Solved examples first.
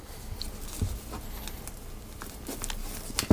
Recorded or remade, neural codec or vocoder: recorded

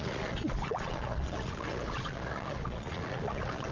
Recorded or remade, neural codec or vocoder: remade, vocoder, Vocos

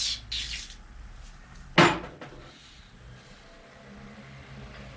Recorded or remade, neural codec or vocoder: recorded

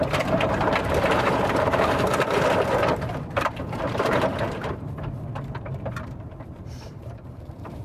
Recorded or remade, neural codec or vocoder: remade, vocoder, BigVGAN v2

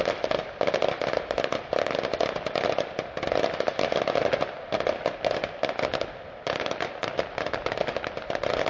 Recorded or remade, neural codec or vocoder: recorded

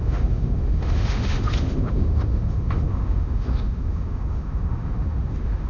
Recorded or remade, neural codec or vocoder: remade, autoencoder, DAC-VAE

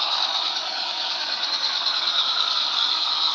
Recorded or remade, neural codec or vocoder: remade, codec, DAC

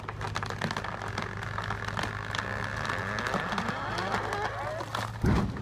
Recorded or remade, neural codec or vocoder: recorded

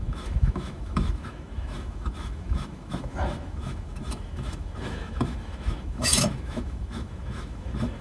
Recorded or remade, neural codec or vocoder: remade, autoencoder, DAC-VAE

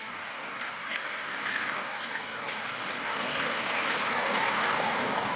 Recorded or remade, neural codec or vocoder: remade, codec, DAC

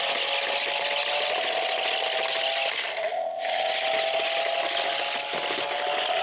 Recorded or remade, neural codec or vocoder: recorded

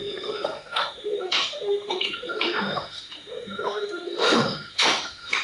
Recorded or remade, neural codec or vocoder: remade, autoencoder, DAC-VAE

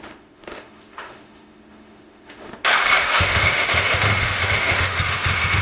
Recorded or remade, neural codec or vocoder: remade, autoencoder, DAC-VAE